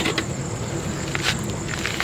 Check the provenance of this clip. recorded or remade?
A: recorded